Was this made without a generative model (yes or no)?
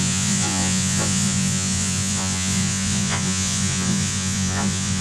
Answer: no